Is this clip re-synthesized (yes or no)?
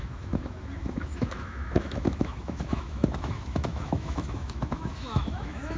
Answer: yes